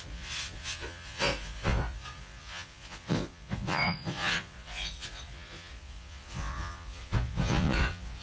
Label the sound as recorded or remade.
remade